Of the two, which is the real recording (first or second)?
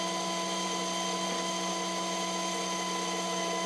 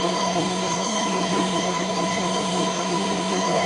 first